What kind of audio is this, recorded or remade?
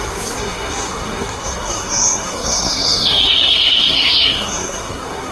remade